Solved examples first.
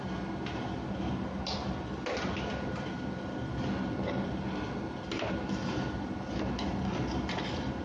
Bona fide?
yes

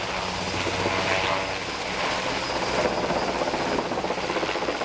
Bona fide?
yes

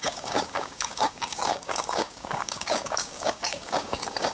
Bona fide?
no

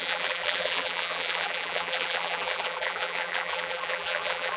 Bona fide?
no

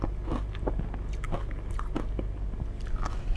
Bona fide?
yes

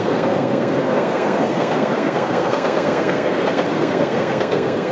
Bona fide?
no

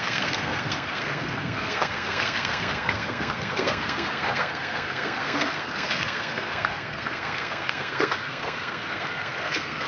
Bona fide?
no